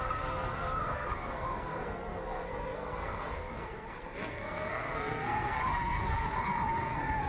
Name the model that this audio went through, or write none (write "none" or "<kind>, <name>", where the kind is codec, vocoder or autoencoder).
codec, SNAC